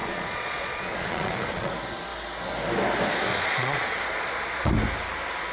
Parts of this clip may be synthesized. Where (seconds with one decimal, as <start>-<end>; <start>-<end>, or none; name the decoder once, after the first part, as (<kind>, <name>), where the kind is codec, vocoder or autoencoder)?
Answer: 0.0-1.7 (vocoder, Vocos); 3.3-4.7